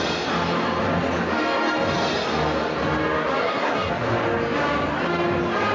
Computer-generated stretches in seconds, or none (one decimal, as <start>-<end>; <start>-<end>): 3.4-3.9